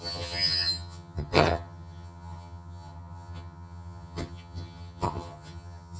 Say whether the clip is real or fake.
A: fake